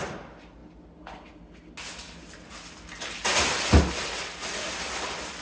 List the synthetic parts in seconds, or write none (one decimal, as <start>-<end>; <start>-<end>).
none